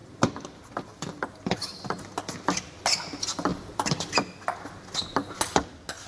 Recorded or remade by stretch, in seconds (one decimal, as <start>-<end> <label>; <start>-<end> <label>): 0.0-2.0 remade; 2.0-3.5 recorded; 3.5-4.1 remade; 4.1-6.1 recorded